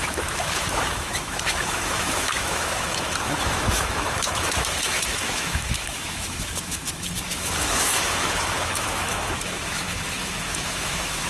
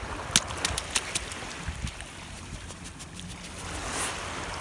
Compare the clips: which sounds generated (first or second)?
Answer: first